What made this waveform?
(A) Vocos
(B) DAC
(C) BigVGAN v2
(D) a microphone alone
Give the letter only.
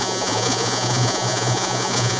A